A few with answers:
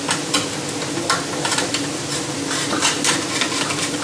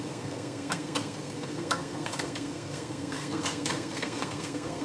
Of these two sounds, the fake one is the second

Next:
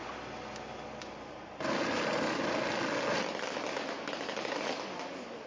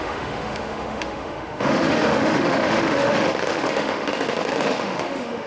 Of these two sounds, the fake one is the second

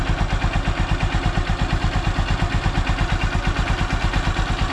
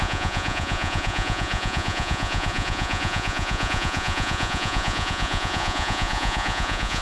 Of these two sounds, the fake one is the second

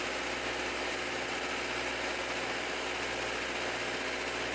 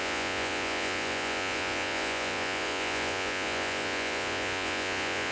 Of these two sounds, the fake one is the second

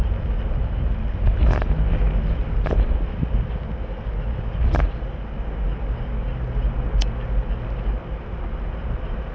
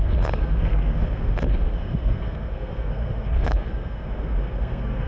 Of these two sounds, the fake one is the second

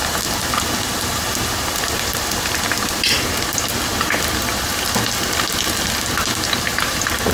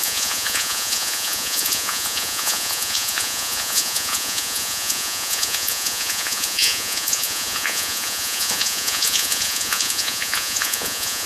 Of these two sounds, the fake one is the second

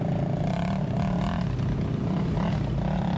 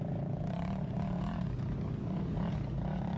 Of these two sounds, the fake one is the second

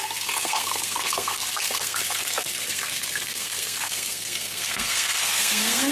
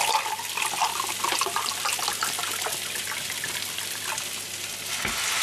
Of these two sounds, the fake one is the first